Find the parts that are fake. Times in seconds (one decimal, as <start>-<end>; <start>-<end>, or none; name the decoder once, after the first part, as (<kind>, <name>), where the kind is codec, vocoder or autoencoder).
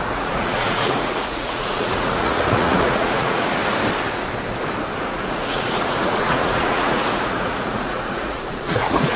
0.0-3.6 (vocoder, Vocos); 5.0-9.2